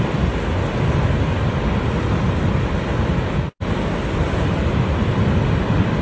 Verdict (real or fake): real